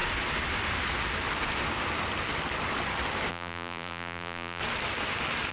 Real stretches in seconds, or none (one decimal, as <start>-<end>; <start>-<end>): 0.0-3.3; 4.6-5.5